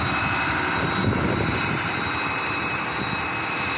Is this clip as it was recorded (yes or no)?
no